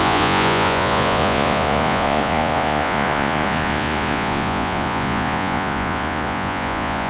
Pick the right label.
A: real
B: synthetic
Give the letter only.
B